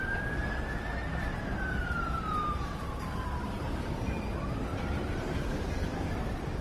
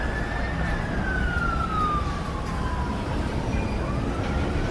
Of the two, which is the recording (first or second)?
second